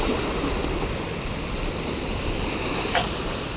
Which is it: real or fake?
real